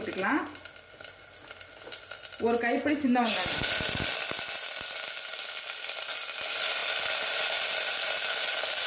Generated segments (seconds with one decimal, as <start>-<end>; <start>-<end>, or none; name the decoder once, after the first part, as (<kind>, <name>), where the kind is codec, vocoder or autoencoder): none